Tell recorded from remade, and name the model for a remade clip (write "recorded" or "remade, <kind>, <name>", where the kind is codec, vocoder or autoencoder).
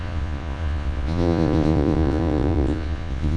remade, vocoder, Vocos